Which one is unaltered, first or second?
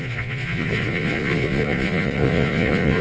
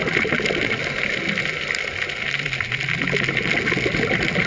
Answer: second